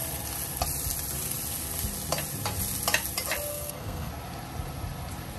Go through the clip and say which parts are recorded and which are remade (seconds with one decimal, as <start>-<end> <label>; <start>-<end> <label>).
0.0-3.5 recorded; 3.5-4.1 remade; 4.1-5.4 recorded

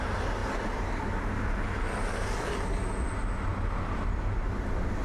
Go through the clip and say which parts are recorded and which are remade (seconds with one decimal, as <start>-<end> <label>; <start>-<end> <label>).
0.0-5.0 recorded

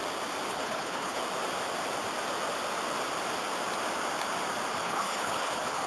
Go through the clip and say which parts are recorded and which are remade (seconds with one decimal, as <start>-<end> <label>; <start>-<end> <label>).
0.0-0.5 recorded; 0.5-1.2 remade; 1.2-4.7 recorded; 4.7-5.9 remade

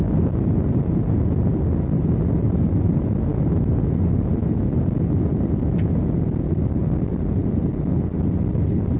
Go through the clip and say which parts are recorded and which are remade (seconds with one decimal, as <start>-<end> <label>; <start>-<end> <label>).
0.0-9.0 recorded

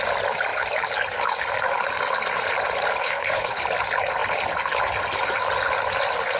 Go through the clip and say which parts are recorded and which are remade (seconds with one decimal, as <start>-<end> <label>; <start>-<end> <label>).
0.0-3.0 recorded; 3.0-3.6 remade; 3.6-6.4 recorded